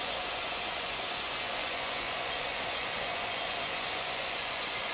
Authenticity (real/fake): fake